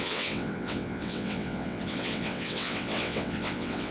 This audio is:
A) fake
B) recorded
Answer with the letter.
A